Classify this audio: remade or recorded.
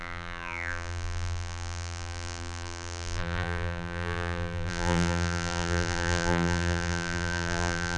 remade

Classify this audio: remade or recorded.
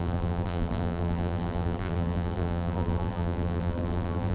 remade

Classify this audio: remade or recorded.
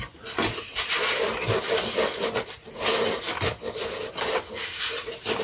remade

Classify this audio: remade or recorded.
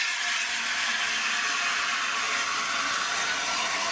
recorded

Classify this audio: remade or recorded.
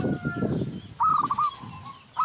recorded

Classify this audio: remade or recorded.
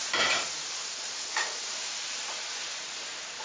remade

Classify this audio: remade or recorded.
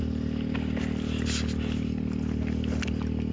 recorded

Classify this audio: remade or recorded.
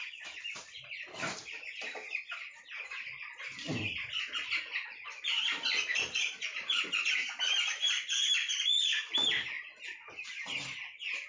remade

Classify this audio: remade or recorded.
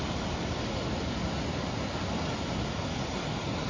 recorded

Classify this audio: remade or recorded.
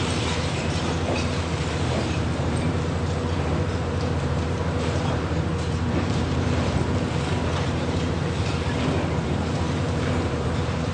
remade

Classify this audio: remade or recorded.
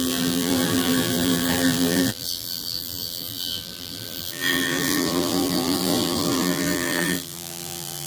remade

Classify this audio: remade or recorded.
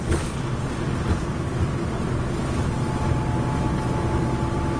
recorded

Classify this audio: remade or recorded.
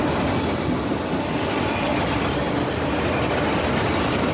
recorded